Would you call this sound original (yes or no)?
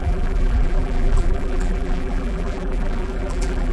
no